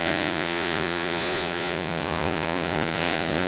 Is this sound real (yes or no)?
no